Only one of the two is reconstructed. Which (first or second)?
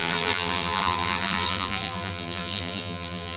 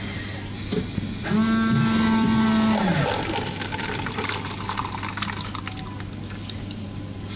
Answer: first